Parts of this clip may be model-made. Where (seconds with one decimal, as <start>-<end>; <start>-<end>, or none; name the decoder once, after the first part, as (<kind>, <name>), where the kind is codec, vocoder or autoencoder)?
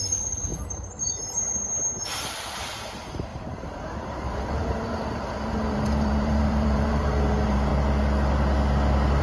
0.0-7.7 (vocoder, BigVGAN v2)